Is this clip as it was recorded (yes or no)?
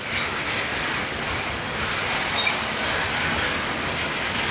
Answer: yes